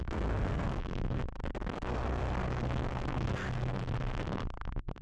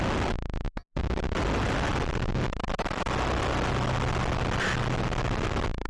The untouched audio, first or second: second